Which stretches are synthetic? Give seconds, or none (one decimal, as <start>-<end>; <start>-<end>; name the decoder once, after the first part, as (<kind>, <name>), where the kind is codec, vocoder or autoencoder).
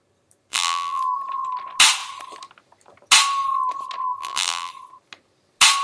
0.5-1.0 (vocoder, BigVGAN v2); 4.2-4.7